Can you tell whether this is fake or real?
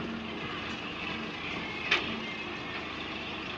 real